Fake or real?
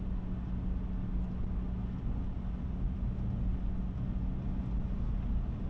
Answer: real